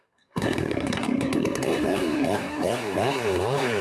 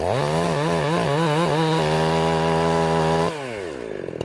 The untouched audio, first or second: second